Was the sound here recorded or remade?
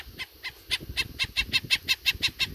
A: recorded